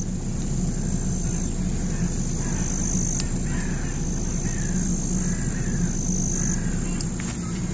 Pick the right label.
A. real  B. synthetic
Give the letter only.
A